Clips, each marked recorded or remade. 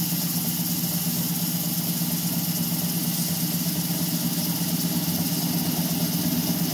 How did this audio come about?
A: recorded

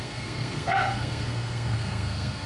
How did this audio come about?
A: remade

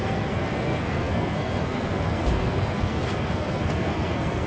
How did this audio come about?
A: remade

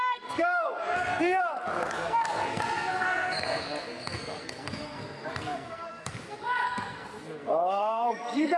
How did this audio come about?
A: remade